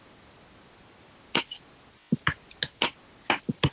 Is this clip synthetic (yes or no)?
no